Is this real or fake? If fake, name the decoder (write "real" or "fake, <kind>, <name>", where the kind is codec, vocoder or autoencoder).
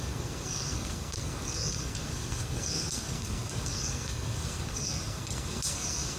fake, codec, SNAC